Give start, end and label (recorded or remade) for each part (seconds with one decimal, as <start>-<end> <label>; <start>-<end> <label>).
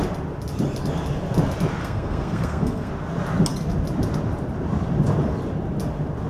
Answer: 0.0-1.8 recorded; 1.8-2.9 remade; 2.9-6.3 recorded